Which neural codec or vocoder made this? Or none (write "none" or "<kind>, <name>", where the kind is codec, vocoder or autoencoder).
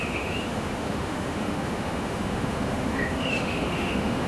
autoencoder, DAC-VAE